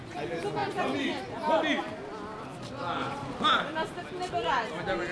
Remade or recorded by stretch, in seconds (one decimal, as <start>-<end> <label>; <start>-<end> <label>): 0.0-5.1 recorded